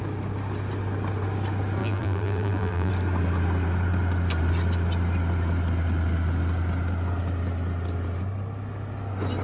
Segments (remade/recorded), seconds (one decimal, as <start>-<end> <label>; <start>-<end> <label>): 0.0-1.8 recorded; 1.8-2.9 remade; 2.9-9.4 recorded